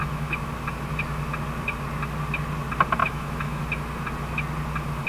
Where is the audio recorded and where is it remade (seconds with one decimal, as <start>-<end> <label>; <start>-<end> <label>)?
0.0-0.5 remade; 0.5-3.0 recorded; 3.0-3.6 remade; 3.6-5.1 recorded